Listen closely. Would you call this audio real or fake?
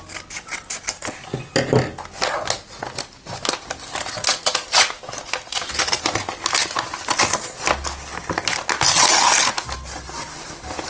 real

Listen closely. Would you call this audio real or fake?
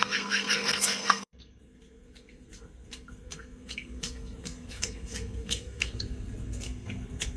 fake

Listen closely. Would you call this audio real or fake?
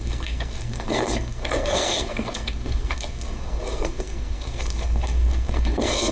fake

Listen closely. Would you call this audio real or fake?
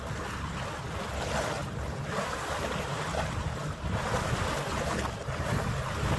real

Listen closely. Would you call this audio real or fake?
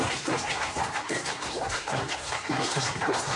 fake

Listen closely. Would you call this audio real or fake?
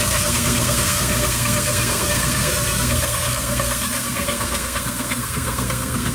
fake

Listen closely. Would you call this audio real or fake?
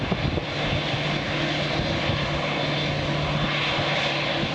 real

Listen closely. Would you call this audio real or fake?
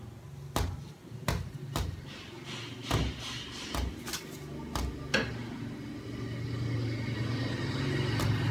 real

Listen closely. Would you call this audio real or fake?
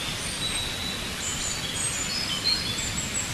real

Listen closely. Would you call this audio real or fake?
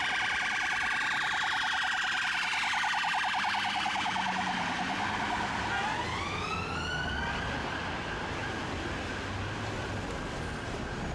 real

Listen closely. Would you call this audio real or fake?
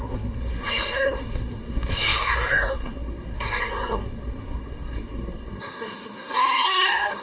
fake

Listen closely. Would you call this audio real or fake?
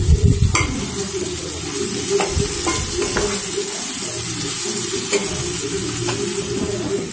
real